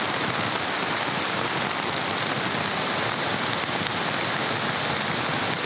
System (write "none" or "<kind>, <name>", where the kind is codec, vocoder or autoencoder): none